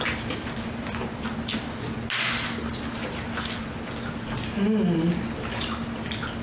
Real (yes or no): yes